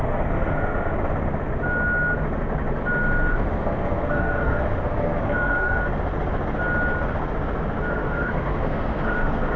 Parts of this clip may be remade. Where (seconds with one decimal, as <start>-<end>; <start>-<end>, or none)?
0.0-0.9; 3.3-5.8; 7.9-9.6

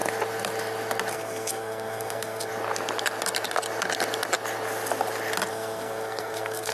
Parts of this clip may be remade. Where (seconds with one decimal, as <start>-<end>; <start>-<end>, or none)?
1.1-2.5; 5.5-6.7